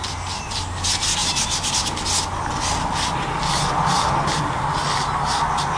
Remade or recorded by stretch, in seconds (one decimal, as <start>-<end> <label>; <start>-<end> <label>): 0.0-5.8 recorded